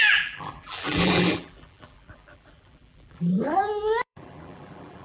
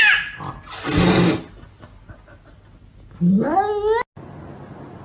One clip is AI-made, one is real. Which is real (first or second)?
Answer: second